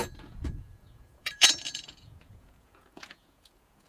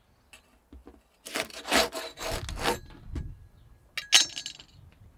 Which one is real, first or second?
second